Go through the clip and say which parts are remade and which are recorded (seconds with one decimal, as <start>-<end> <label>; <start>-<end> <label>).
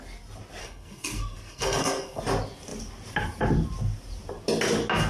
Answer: 0.0-0.6 recorded; 0.6-2.2 remade; 2.2-5.1 recorded